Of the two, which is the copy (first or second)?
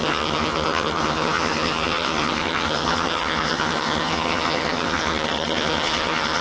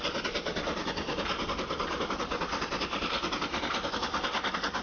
first